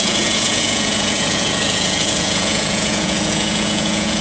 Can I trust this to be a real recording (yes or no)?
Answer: no